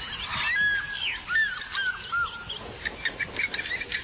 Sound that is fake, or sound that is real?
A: real